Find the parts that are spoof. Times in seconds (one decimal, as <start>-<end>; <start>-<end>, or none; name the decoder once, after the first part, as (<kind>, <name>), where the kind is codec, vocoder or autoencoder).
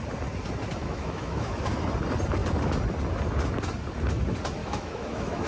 0.8-1.8 (autoencoder, DAC-VAE); 4.6-5.5